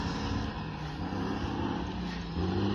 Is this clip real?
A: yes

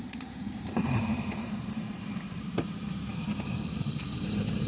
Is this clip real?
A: no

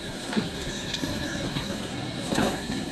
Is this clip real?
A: no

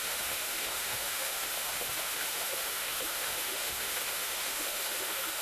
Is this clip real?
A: no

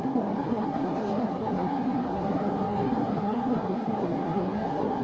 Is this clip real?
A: no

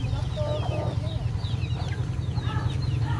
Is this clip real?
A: yes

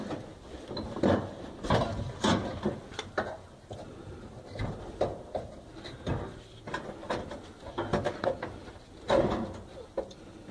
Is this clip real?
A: no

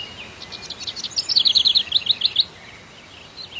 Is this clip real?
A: yes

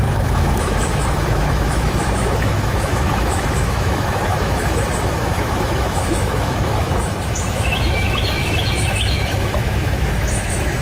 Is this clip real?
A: no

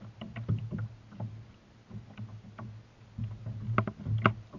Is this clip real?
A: yes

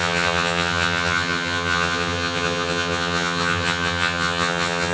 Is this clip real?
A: no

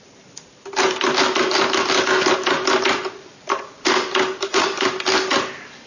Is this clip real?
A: yes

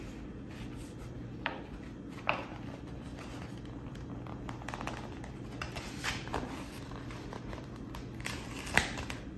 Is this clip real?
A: yes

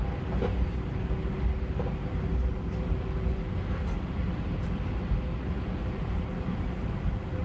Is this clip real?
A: yes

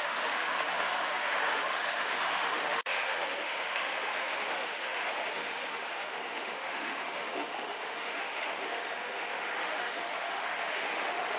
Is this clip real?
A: no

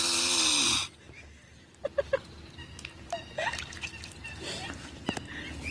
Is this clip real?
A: yes